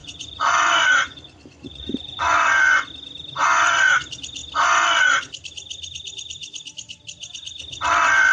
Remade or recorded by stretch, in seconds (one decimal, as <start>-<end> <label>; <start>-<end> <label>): 0.0-2.9 remade; 2.9-8.3 recorded